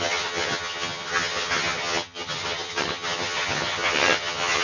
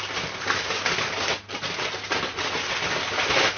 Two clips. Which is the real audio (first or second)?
second